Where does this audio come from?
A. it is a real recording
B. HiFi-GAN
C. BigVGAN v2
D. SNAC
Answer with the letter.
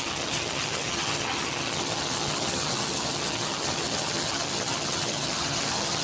B